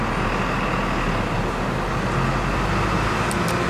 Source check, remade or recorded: recorded